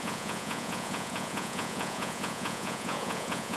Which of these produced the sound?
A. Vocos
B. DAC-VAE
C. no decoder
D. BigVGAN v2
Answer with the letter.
A